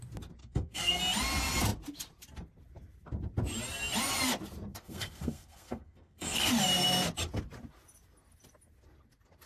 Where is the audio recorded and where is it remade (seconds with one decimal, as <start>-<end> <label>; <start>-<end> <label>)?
0.0-0.4 recorded; 0.4-1.0 remade; 1.0-4.7 recorded; 4.7-6.5 remade; 6.5-9.5 recorded